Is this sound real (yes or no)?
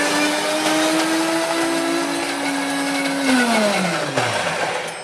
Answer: yes